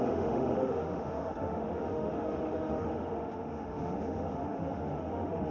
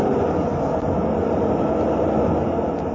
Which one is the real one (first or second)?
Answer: second